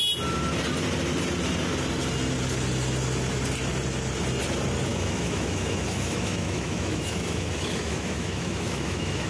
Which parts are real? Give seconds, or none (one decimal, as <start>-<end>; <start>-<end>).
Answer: 0.0-4.9